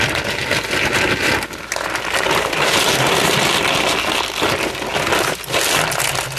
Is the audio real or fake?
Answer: real